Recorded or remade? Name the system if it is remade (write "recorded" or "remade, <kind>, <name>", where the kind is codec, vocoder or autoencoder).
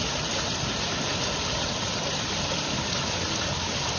recorded